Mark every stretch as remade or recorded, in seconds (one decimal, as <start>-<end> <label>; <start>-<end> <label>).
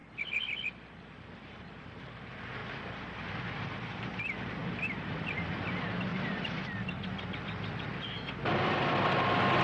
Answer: 0.0-1.6 remade; 1.6-2.6 recorded; 2.6-4.0 remade; 4.0-4.6 recorded; 4.6-5.5 remade; 5.5-6.1 recorded; 6.1-8.7 remade; 8.7-9.6 recorded